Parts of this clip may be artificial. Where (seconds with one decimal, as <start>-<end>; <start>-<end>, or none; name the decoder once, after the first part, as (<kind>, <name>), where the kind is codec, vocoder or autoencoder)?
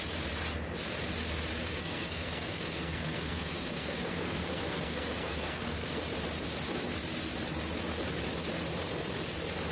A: 1.7-6.0 (codec, SNAC)